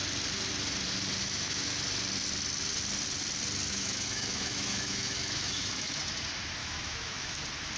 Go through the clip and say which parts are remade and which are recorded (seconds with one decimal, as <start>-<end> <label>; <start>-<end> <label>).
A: 0.0-1.2 recorded; 1.2-1.7 remade; 1.7-3.7 recorded; 3.7-6.0 remade; 6.0-6.6 recorded; 6.6-7.3 remade; 7.3-7.8 recorded